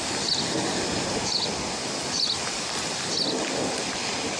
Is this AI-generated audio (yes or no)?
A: no